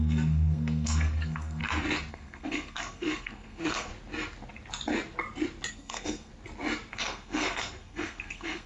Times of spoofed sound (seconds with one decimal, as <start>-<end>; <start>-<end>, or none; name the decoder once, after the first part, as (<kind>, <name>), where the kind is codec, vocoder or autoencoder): 0.0-1.6 (codec, SNAC); 2.1-3.9; 5.7-6.3; 6.9-8.7